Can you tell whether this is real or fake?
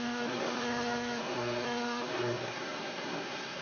fake